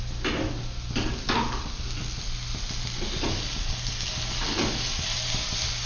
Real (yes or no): yes